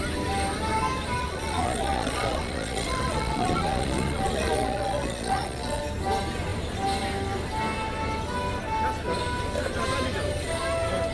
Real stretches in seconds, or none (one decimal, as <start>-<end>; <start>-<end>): 0.0-1.2; 5.8-11.1

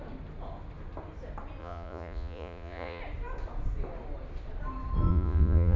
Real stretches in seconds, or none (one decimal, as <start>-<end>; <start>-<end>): 0.0-1.6; 3.0-5.1

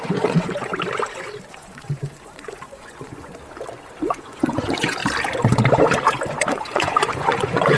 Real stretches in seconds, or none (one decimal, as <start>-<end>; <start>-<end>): 0.7-1.5; 3.3-4.0; 5.0-6.3

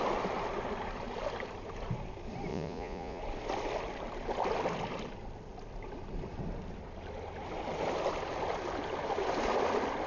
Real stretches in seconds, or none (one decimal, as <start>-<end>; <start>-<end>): 0.0-2.5; 3.2-10.1